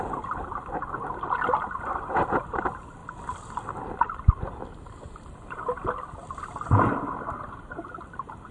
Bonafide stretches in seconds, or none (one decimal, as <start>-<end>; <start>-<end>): 0.0-8.5